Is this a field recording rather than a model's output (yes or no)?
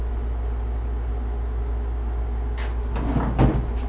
yes